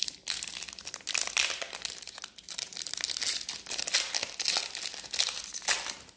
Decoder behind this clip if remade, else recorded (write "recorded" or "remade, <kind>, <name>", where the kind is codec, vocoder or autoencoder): recorded